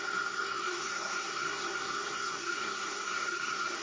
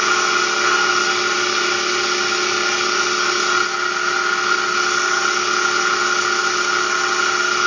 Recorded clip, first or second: second